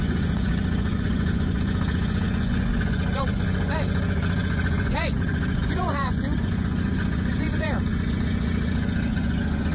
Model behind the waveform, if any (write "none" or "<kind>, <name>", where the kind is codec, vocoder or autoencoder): vocoder, Vocos